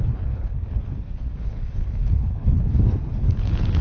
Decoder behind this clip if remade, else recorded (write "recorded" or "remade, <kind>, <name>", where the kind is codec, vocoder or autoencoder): remade, codec, HILCodec